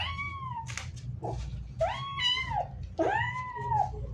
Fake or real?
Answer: real